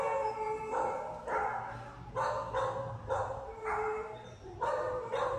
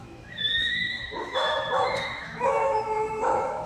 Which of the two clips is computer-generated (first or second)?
second